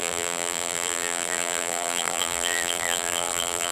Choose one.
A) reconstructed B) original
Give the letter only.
A